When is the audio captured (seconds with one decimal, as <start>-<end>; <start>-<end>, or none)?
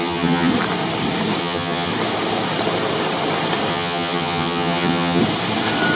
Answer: 0.5-1.4; 1.9-3.7; 5.2-6.0